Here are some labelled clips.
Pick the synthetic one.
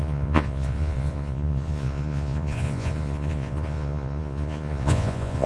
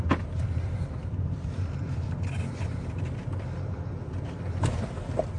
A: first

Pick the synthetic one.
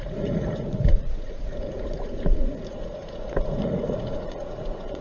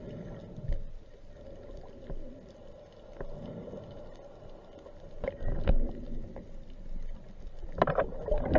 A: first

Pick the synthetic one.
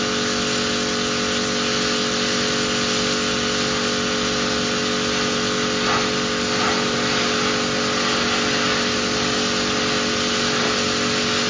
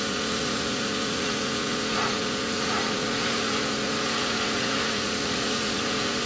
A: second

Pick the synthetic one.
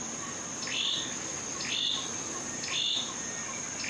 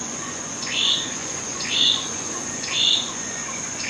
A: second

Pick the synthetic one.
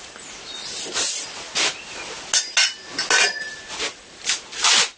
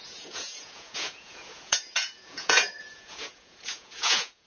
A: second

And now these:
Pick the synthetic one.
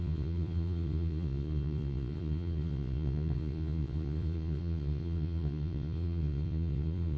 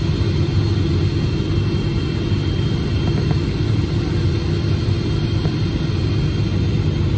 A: first